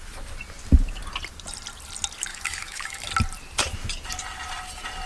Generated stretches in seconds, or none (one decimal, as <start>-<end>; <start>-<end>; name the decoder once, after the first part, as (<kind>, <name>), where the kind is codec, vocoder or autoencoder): 2.3-3.1 (autoencoder, DAC-VAE)